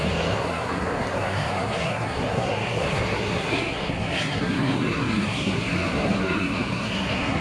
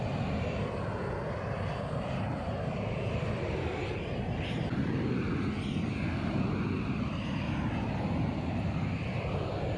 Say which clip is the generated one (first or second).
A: first